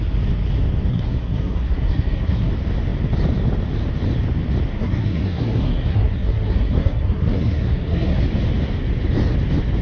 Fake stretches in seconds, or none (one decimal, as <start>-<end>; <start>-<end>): 0.9-2.5; 4.7-8.2

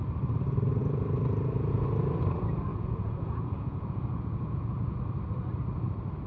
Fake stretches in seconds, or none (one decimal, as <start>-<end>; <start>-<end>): 2.7-5.0